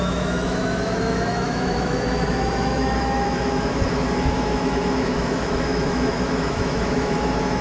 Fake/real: fake